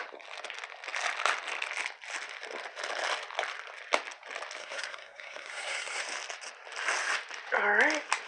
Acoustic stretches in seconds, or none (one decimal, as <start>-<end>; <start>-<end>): 0.0-4.6; 6.0-8.3